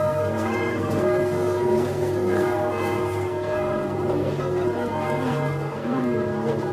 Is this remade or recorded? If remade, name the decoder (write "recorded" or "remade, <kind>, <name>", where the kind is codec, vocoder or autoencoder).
remade, codec, SNAC